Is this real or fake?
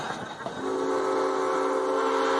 real